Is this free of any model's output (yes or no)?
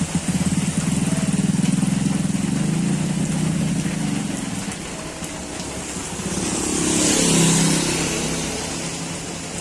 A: yes